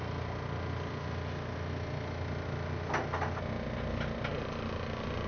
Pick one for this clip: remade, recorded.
recorded